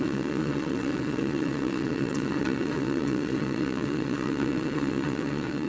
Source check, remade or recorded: remade